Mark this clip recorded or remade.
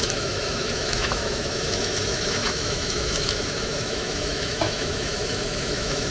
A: remade